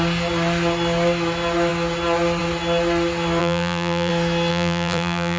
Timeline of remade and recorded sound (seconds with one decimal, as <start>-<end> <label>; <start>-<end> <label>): 0.0-3.4 recorded; 3.4-4.1 remade; 4.1-4.5 recorded; 4.5-5.4 remade